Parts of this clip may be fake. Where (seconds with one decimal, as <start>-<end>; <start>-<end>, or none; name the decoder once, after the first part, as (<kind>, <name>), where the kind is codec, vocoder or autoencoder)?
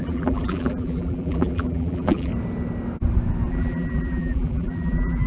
0.0-2.3 (vocoder, BigVGAN v2); 3.5-5.3